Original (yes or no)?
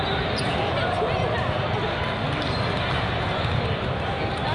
yes